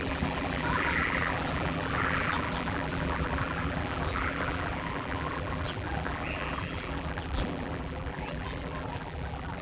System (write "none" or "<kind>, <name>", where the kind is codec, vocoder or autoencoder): vocoder, BigVGAN v2